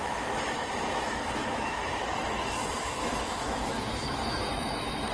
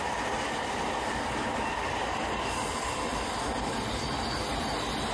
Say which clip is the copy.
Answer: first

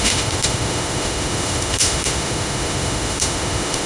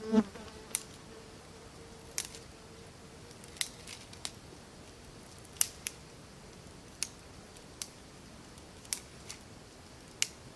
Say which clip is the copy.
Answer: first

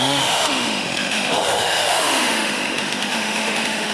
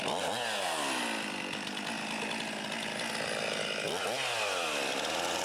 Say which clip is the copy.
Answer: first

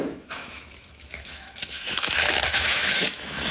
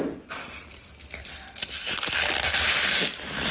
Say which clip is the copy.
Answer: first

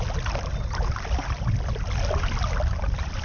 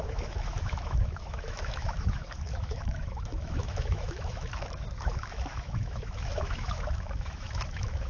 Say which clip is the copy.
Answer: second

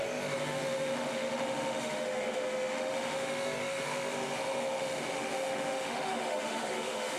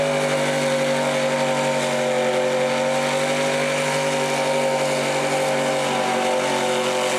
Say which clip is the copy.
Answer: first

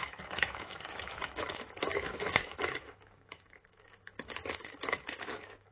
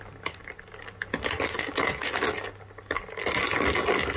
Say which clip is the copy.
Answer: first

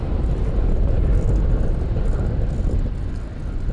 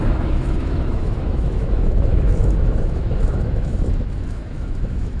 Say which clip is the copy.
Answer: second